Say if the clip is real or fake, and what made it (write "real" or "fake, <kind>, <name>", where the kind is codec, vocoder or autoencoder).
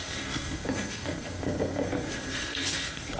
fake, codec, SNAC